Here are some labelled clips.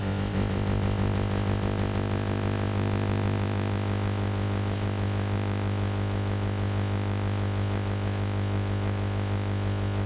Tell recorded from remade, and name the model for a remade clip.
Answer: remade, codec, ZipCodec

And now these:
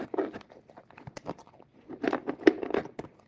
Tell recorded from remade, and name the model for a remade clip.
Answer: recorded